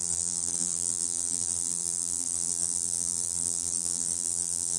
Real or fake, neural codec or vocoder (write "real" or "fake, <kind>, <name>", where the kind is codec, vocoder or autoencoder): fake, vocoder, BigVGAN v2